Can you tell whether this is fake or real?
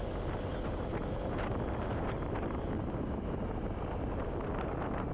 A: real